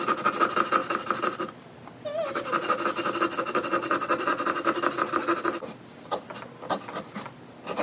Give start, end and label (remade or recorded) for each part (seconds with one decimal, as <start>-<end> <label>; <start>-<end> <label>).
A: 0.0-7.8 recorded